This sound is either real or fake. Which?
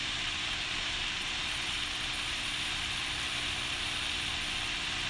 real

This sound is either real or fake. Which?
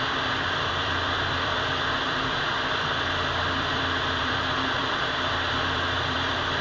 fake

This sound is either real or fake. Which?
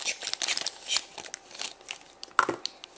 real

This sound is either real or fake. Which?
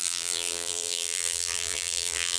fake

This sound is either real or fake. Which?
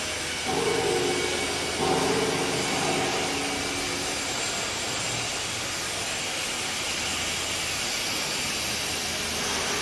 real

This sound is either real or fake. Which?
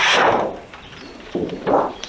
fake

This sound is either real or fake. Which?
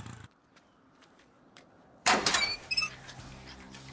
fake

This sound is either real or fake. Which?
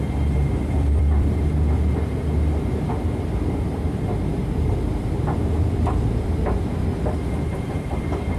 fake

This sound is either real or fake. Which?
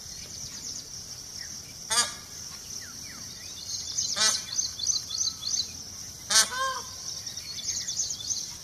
real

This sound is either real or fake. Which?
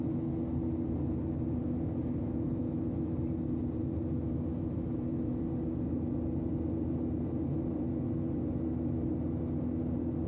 real